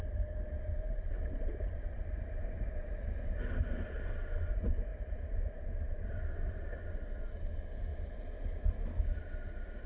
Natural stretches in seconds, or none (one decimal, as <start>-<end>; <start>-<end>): 4.9-5.8; 7.9-9.4

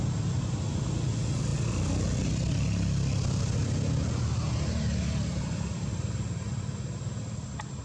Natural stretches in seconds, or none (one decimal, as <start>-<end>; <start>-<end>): 0.0-7.8

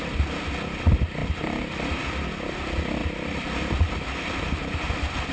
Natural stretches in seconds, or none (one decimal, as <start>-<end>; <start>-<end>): 0.0-5.3

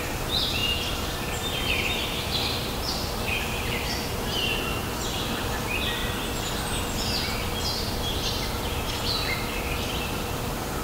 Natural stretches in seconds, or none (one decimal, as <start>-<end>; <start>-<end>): 6.0-8.9

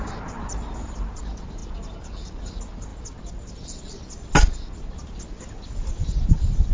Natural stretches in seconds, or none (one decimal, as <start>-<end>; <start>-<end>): 0.0-1.6; 2.5-6.7

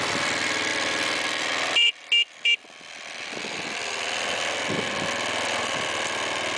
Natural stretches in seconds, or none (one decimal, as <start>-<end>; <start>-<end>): 0.0-6.6

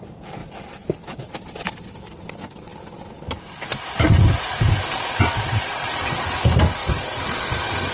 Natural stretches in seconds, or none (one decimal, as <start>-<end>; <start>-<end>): 0.0-6.8

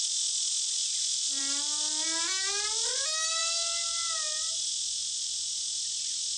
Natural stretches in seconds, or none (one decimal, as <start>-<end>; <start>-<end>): 0.0-6.4